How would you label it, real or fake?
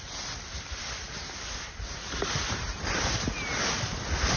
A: real